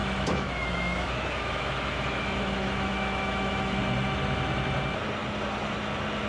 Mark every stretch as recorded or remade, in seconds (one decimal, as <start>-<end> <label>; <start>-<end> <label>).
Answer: 0.0-3.8 remade; 3.8-6.3 recorded